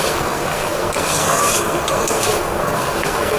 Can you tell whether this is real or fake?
fake